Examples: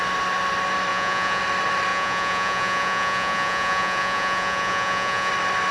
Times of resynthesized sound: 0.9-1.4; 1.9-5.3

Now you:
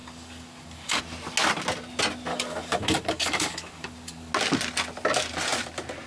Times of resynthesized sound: 0.0-1.0; 2.3-4.3

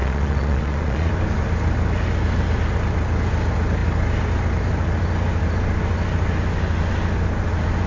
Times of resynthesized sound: 0.0-1.1

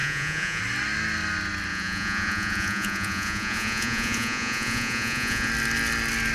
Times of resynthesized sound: 0.0-0.6; 1.7-5.5

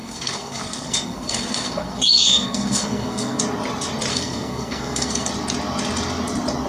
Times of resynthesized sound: 0.0-3.4; 4.1-5.3

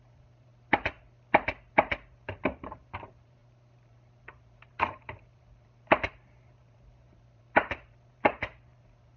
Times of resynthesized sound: 0.0-0.5; 1.7-9.2

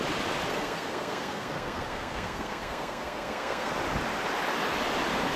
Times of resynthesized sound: 0.5-3.7

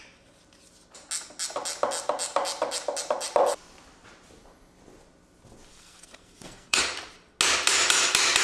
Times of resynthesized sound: 5.7-6.8